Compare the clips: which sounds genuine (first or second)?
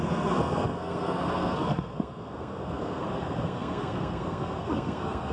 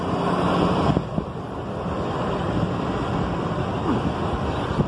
second